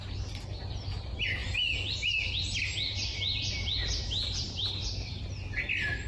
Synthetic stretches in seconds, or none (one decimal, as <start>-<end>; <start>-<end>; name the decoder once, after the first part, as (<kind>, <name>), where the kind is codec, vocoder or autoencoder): none